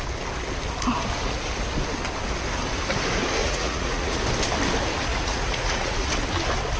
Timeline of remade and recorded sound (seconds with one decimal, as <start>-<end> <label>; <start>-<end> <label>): 0.0-3.4 recorded; 3.4-4.2 remade; 4.2-5.1 recorded; 5.1-6.1 remade; 6.1-6.8 recorded